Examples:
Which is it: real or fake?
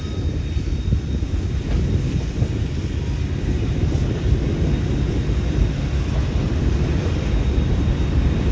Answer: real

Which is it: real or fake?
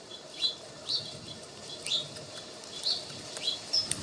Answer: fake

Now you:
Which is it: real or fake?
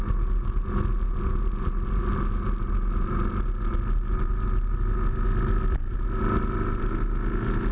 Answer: real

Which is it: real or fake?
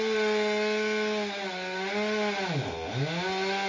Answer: real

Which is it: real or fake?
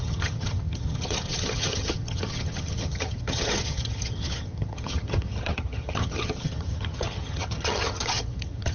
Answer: fake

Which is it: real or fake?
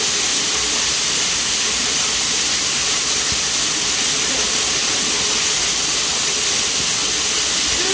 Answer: real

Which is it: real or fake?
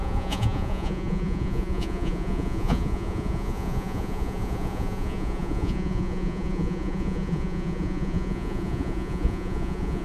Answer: fake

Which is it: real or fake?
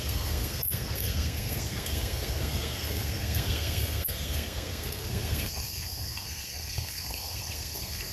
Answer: fake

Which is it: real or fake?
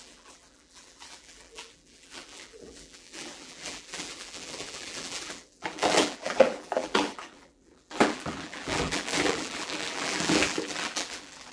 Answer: fake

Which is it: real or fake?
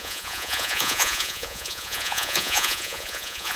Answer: fake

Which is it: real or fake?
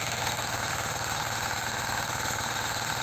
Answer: fake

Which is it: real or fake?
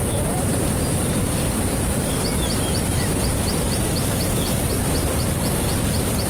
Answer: fake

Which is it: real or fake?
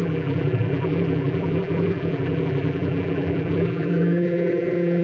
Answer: fake